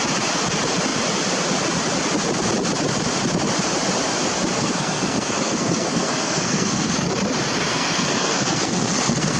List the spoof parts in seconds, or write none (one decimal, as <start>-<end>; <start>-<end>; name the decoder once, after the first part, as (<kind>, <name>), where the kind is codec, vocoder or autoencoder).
4.5-7.1 (codec, SNAC); 7.7-9.4